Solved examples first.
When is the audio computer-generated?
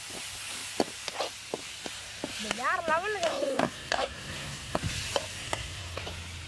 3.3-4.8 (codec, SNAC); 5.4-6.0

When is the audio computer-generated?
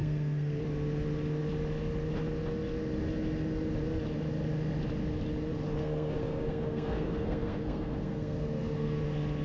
0.0-0.6 (codec, SNAC); 5.8-9.0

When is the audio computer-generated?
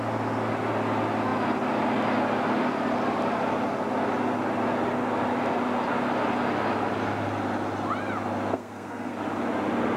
8.5-9.2 (codec, SNAC)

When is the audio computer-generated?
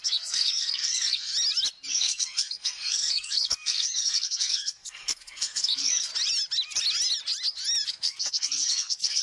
0.0-1.3 (codec, SNAC); 1.9-6.1; 7.9-9.2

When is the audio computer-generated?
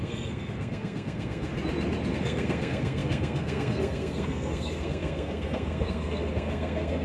0.0-1.5 (codec, SNAC); 2.1-7.0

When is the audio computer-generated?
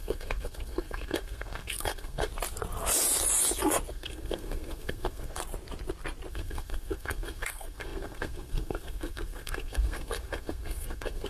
0.0-2.3 (codec, SNAC); 3.9-5.4; 6.3-11.3